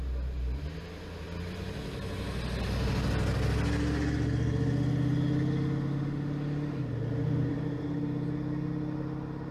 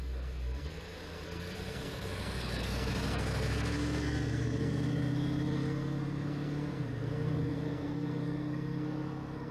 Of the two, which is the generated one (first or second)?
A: second